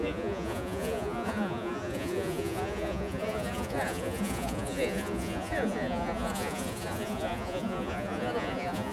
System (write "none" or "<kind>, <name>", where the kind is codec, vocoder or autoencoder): vocoder, Vocos